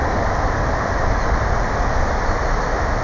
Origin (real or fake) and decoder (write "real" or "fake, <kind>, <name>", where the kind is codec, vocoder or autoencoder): real